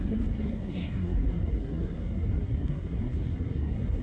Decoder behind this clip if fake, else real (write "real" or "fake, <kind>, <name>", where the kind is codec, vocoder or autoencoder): fake, codec, SNAC